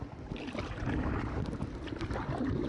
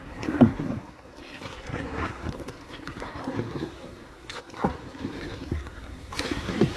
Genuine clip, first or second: first